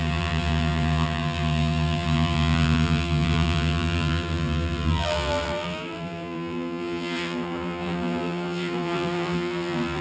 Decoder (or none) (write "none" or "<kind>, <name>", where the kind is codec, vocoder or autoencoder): vocoder, BigVGAN v2